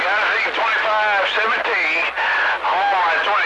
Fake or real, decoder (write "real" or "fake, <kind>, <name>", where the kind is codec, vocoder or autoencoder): real